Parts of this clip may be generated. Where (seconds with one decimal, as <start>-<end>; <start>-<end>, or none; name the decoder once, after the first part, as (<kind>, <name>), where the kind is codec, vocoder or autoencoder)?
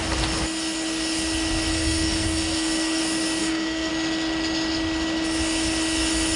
1.7-3.0 (codec, SNAC); 3.4-3.9